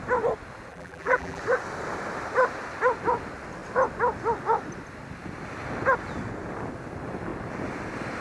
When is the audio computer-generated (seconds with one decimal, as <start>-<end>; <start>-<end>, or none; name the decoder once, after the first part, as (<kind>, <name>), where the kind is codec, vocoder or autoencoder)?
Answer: 0.7-1.4 (vocoder, BigVGAN v2)